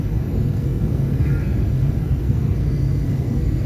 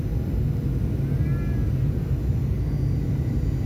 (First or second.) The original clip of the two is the second